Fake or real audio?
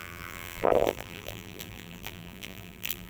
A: fake